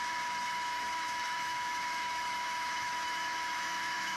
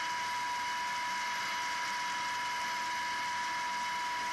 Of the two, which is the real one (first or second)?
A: second